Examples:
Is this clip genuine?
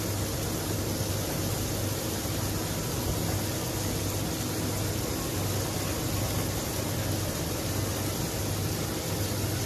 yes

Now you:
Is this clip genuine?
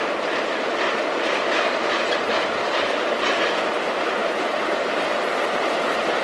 yes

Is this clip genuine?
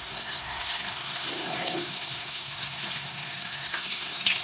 no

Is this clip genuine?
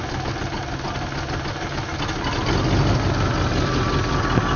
yes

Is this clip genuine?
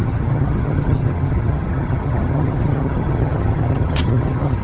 no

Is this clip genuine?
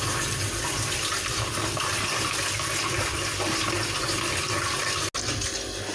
yes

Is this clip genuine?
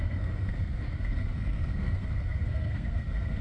no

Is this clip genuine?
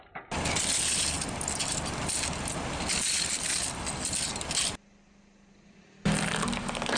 yes